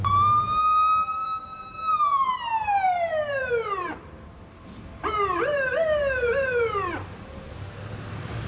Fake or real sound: fake